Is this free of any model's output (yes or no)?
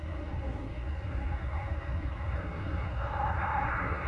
no